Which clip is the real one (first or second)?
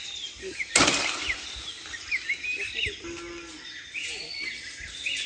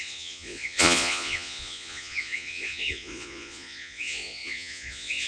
first